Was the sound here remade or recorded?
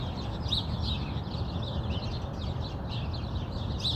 recorded